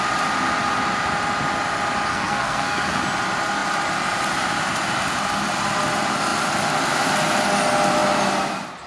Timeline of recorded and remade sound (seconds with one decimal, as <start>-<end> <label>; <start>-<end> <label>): 0.0-2.1 recorded; 2.1-3.0 remade; 3.0-8.9 recorded